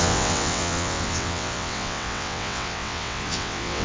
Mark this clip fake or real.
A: fake